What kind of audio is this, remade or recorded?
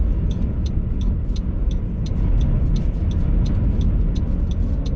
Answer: recorded